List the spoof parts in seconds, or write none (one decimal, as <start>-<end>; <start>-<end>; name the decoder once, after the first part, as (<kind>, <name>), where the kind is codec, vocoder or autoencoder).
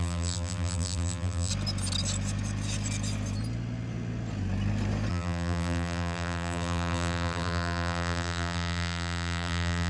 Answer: 0.0-1.5 (vocoder, BigVGAN v2); 5.1-9.9